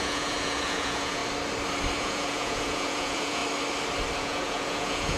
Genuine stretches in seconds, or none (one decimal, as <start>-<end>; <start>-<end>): 1.2-2.0; 3.4-4.2